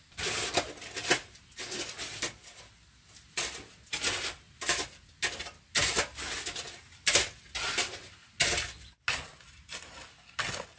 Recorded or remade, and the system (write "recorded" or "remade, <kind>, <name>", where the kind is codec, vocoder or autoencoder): recorded